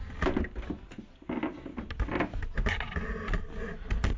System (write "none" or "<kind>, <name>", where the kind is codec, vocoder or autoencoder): none